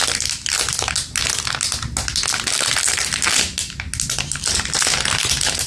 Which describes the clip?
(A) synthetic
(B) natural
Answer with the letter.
B